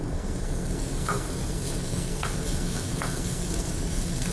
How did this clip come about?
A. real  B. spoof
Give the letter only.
B